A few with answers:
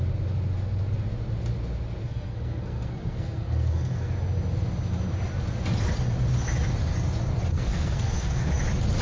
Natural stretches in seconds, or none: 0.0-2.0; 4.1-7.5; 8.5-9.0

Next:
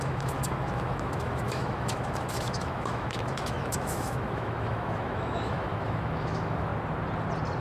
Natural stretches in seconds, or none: 6.7-7.6